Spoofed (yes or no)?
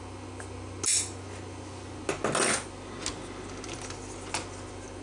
no